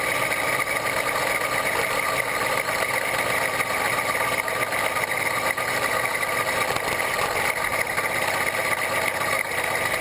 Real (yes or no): yes